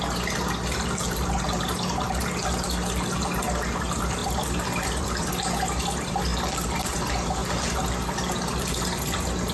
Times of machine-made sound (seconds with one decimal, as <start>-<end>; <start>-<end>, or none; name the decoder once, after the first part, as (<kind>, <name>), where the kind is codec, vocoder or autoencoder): 4.2-5.3 (vocoder, BigVGAN v2)